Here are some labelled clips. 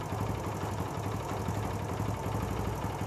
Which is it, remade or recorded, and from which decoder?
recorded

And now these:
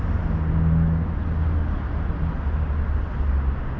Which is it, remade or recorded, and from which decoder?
recorded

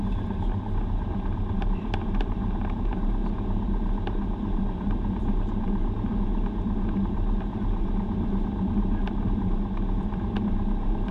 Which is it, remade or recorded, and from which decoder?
remade, vocoder, BigVGAN v2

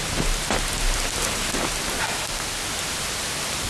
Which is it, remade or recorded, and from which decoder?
recorded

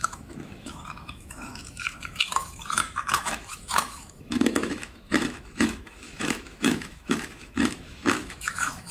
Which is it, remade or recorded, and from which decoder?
remade, autoencoder, DAC-VAE